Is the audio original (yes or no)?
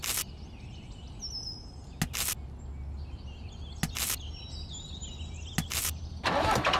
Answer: yes